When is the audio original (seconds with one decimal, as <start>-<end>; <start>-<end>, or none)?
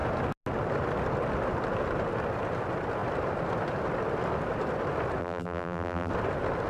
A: 0.0-5.2; 6.1-6.7